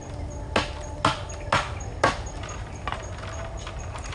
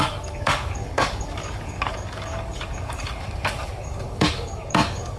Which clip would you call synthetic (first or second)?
second